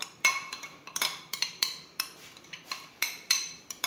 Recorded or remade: remade